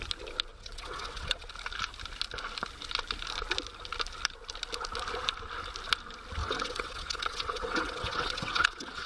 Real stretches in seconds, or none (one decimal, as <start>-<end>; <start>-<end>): 0.0-0.5; 1.5-6.4